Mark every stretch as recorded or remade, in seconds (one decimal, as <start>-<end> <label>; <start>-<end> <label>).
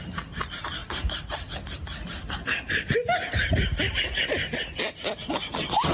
0.0-5.9 recorded